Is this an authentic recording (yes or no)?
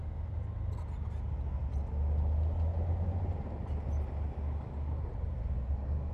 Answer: yes